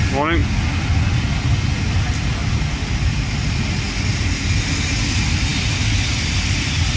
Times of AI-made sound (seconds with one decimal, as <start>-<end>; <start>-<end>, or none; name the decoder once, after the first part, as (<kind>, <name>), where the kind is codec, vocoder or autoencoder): none